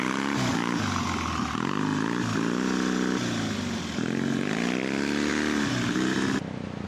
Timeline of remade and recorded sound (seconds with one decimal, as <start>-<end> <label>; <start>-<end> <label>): 0.0-6.9 recorded